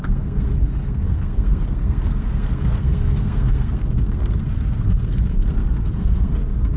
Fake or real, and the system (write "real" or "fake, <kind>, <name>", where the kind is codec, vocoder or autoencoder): fake, codec, SNAC